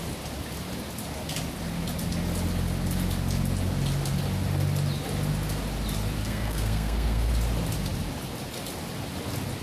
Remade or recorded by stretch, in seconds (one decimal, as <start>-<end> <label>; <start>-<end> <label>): 0.0-6.2 recorded; 6.2-7.3 remade; 7.3-9.6 recorded